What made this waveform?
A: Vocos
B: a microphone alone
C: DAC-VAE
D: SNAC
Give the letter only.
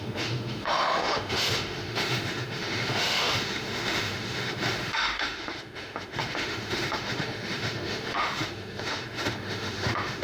C